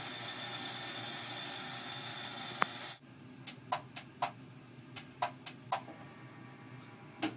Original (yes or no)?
yes